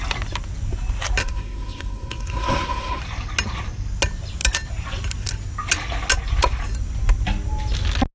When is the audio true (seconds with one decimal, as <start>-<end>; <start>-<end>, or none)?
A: 0.0-1.2; 3.0-8.1